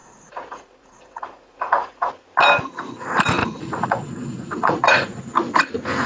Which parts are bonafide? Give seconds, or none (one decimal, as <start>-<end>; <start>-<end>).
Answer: 2.1-3.4; 5.3-6.1